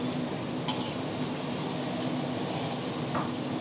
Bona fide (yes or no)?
yes